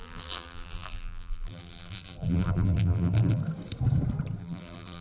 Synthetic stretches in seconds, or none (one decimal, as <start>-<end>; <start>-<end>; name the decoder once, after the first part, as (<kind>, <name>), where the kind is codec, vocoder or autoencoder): 0.0-3.4 (vocoder, BigVGAN v2); 4.4-5.0